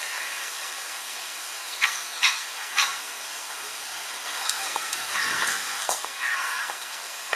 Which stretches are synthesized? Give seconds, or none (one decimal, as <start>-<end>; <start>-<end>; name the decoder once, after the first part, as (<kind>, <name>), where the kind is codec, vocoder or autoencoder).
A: 0.0-7.4 (codec, SNAC)